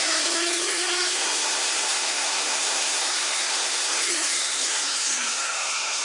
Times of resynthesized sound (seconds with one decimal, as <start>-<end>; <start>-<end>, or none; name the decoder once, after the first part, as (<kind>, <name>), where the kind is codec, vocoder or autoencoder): 0.0-6.0 (codec, SNAC)